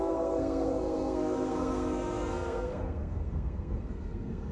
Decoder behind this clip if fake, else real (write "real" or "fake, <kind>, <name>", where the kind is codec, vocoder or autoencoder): fake, codec, SNAC